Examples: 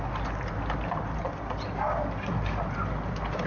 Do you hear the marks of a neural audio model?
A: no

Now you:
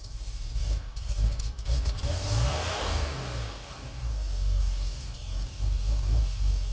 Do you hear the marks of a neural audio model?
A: yes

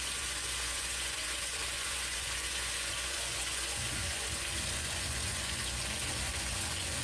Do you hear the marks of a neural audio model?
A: yes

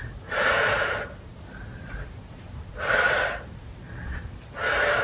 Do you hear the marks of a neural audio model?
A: yes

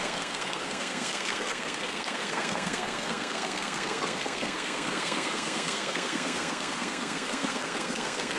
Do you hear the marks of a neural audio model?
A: yes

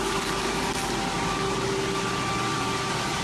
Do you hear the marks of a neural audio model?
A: no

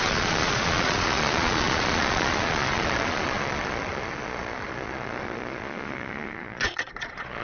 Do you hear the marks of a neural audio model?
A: yes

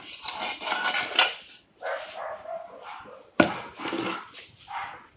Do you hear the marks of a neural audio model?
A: no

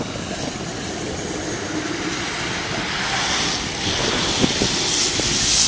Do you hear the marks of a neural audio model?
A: no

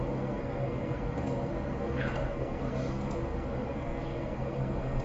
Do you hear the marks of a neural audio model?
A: yes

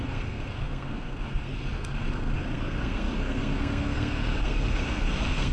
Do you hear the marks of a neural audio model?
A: yes